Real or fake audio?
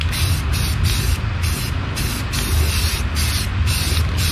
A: real